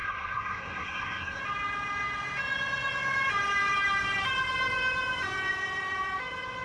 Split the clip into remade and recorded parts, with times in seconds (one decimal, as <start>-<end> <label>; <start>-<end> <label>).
0.0-1.4 remade; 1.4-6.6 recorded